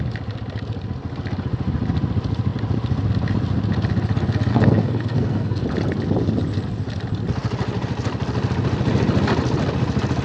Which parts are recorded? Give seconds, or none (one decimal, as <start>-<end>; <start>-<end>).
0.0-4.5; 5.6-10.2